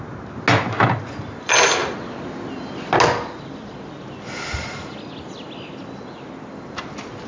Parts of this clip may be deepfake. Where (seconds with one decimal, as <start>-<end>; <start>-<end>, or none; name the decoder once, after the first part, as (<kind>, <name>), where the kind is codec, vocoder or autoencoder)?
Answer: none